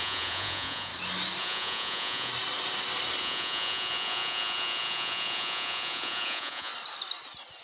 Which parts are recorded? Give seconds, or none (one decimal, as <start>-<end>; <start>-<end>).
0.9-1.4; 2.3-3.2; 6.7-7.6